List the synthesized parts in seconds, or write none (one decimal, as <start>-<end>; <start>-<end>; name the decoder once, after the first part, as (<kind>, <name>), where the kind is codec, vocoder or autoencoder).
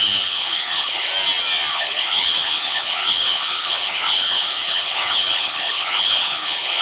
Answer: 0.0-1.1 (codec, HILCodec); 1.7-6.8